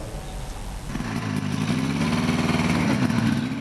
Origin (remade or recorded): recorded